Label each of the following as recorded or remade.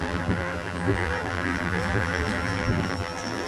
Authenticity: remade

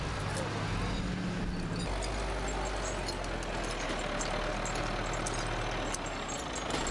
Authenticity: recorded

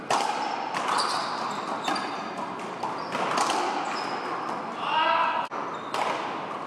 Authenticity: recorded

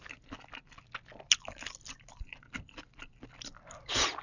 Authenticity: recorded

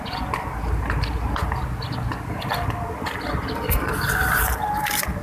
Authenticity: recorded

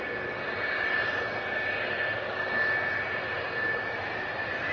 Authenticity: recorded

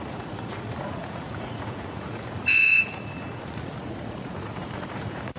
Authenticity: remade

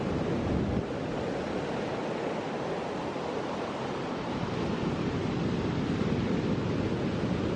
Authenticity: recorded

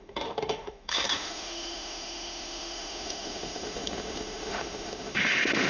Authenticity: remade